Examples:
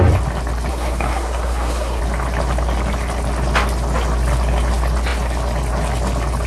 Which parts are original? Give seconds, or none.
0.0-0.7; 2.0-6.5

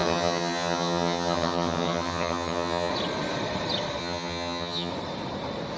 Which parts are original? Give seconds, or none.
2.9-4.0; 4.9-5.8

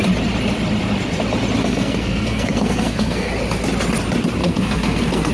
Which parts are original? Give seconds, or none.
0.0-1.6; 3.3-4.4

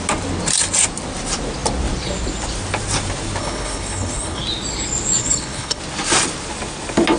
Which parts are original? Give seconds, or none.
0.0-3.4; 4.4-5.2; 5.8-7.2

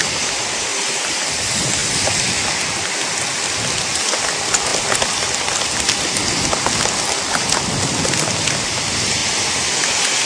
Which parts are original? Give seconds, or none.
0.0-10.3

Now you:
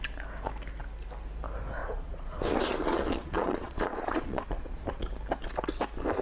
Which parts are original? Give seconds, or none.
0.0-1.8; 5.1-6.2

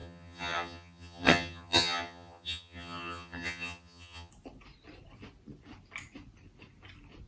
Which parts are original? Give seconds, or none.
4.3-7.3